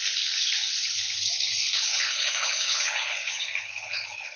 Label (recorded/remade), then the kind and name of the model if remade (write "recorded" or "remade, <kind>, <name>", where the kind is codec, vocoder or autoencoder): remade, codec, HILCodec